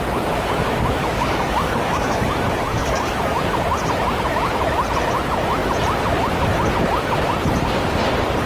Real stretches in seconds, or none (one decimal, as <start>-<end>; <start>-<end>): 0.0-1.0; 3.4-8.5